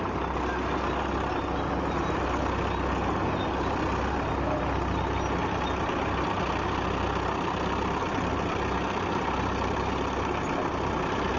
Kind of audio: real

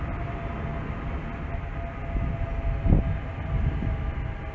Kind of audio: real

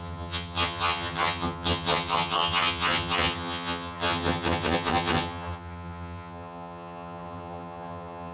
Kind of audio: fake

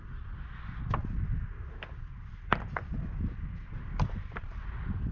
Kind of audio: real